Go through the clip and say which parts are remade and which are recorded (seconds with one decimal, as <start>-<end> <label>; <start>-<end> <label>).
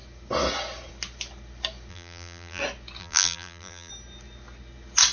0.0-1.9 recorded; 1.9-2.6 remade; 2.6-3.0 recorded; 3.0-3.9 remade; 3.9-5.1 recorded